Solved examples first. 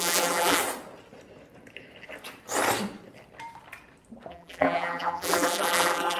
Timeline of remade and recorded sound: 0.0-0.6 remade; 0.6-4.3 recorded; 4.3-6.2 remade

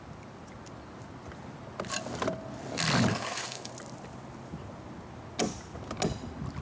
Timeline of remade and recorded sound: 0.0-3.1 recorded; 3.1-3.7 remade; 3.7-6.6 recorded